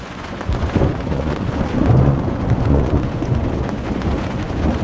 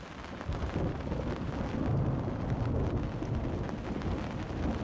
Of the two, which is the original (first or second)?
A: second